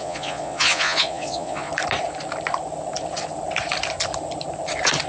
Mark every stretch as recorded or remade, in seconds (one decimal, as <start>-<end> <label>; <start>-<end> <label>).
0.0-1.7 remade; 1.7-5.1 recorded